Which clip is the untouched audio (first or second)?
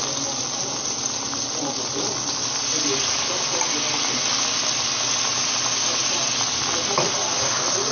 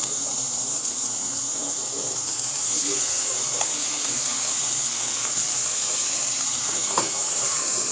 first